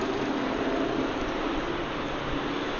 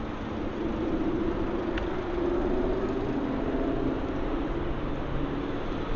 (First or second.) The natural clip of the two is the second